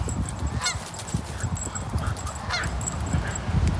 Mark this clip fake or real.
real